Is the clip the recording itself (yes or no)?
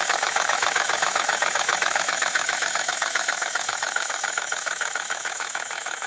no